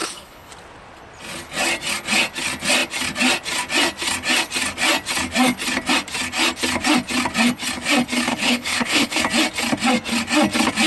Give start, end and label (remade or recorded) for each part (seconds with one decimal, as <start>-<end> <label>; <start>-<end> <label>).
0.0-0.5 remade; 0.5-8.3 recorded; 8.3-9.2 remade; 9.2-10.9 recorded